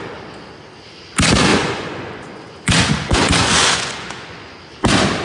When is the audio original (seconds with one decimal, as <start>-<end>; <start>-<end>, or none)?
0.0-1.5; 4.6-5.2